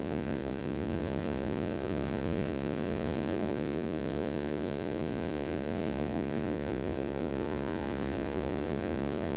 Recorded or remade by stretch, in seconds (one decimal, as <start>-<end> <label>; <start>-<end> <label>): 0.0-9.4 remade